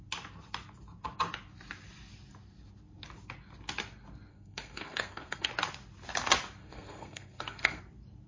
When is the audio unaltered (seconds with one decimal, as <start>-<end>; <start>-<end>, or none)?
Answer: 0.0-4.3; 5.5-6.6; 7.8-8.3